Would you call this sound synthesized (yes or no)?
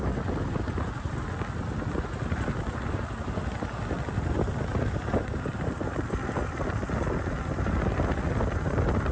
no